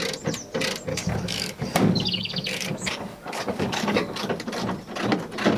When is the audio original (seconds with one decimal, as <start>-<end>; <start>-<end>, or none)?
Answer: 0.0-0.9; 4.3-5.6